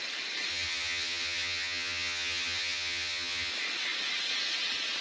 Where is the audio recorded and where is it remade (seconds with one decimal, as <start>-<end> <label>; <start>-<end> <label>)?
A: 0.0-0.5 recorded; 0.5-3.5 remade; 3.5-5.0 recorded